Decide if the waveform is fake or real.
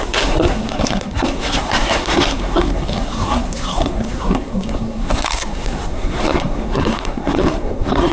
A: fake